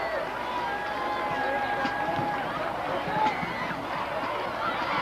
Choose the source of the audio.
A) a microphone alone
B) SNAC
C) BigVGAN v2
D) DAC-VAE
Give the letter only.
A